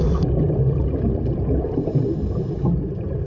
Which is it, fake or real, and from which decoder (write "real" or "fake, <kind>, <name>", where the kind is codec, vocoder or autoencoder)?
real